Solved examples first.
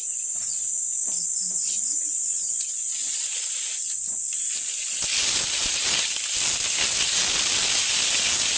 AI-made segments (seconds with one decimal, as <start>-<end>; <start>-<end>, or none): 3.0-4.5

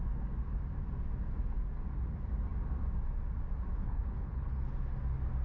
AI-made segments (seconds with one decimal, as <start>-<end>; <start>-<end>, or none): 3.7-4.7

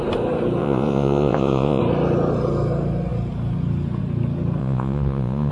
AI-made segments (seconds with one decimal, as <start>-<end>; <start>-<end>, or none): 0.6-1.8; 4.6-5.5